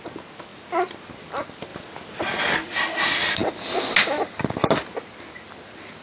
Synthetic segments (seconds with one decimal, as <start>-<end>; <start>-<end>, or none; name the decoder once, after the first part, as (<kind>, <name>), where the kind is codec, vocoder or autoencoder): none